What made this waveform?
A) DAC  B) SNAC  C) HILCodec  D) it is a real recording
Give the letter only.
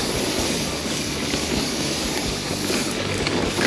A